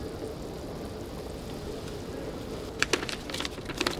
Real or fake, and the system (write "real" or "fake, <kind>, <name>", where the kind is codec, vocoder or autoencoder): real